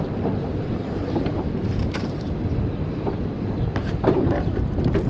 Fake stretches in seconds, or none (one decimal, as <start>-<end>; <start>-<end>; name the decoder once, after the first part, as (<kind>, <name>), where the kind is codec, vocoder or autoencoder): 0.4-2.3 (vocoder, BigVGAN v2); 3.8-4.5

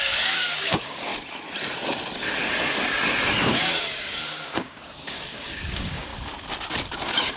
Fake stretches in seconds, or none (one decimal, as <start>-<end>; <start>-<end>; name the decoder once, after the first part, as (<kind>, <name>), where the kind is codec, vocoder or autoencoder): 0.0-1.1 (codec, DAC); 3.3-6.1; 6.9-7.4

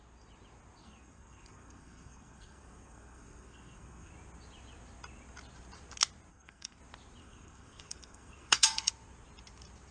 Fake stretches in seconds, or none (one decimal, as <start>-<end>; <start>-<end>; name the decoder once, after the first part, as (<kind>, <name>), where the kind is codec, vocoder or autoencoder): 0.8-4.1 (codec, SNAC); 6.3-6.8; 7.2-8.9

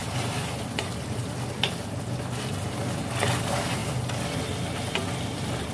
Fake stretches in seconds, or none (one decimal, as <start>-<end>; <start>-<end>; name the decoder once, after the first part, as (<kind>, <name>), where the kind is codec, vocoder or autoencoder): none